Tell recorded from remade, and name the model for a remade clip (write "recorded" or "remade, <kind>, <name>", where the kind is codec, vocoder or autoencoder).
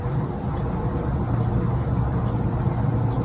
recorded